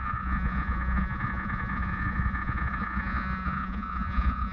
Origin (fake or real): fake